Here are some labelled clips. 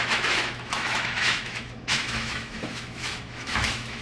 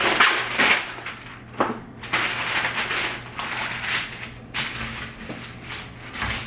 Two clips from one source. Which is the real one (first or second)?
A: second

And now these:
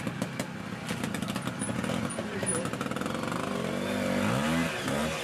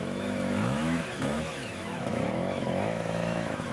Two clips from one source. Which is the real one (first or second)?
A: first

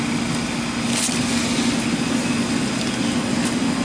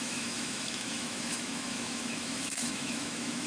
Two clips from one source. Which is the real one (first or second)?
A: first